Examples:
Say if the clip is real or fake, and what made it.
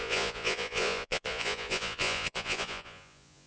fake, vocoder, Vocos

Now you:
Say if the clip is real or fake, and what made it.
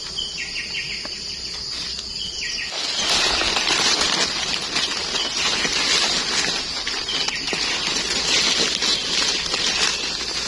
real